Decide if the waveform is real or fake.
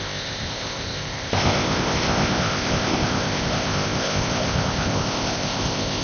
fake